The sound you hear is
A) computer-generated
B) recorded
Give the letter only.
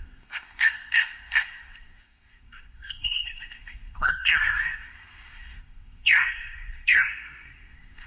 A